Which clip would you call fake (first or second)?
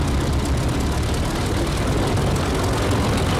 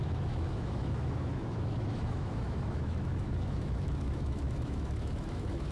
second